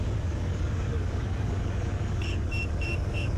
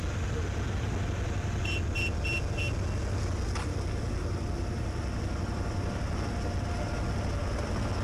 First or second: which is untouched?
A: second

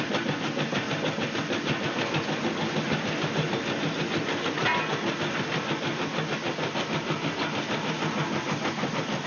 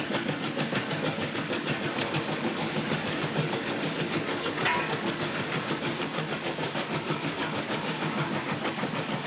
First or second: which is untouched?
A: first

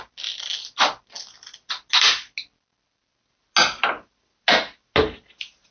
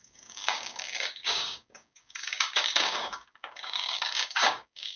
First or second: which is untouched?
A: first